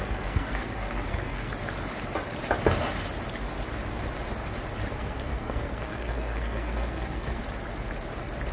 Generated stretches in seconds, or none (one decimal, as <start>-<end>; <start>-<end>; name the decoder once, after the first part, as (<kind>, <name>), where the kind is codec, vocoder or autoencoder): 0.0-1.5 (codec, SNAC); 4.9-7.4